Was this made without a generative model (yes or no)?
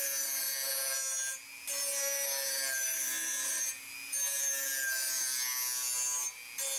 yes